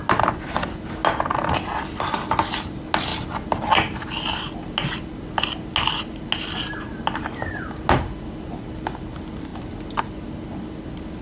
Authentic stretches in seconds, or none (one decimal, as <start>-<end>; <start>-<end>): 0.0-11.2